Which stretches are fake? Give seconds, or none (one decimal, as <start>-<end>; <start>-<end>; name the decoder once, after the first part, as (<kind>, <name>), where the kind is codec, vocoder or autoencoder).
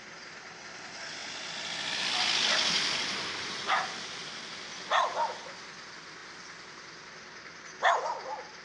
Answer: none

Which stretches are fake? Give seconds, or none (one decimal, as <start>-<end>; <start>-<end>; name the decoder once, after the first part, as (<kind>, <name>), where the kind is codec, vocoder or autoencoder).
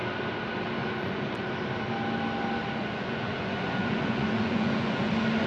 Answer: 0.8-1.5 (vocoder, Vocos); 2.8-5.1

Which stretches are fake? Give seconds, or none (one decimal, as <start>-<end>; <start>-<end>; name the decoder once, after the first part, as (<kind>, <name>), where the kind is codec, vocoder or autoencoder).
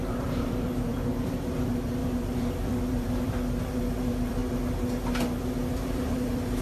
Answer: 0.0-4.4 (vocoder, BigVGAN v2); 5.4-6.6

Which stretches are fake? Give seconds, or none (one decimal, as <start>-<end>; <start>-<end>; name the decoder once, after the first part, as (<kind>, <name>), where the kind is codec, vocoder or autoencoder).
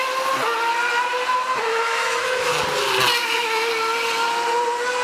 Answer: 1.7-2.5 (autoencoder, DAC-VAE); 3.2-3.7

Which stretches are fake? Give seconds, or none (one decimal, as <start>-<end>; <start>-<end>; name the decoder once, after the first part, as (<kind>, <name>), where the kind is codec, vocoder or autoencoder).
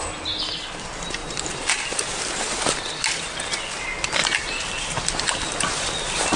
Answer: none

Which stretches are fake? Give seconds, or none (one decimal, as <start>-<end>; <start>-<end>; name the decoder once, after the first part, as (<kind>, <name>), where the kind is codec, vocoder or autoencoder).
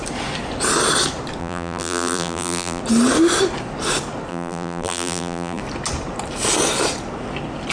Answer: 1.4-2.8 (vocoder, BigVGAN v2); 4.3-5.6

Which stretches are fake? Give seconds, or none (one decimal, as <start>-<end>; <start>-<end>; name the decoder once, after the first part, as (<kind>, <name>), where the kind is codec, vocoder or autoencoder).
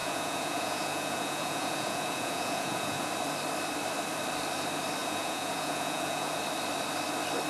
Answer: 0.0-3.1 (vocoder, Vocos); 5.0-6.4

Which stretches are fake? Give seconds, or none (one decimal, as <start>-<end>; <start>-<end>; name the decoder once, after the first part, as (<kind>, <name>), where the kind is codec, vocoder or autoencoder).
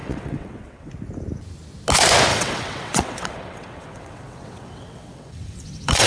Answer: 0.0-0.9 (vocoder, WaveNeXt); 2.3-6.1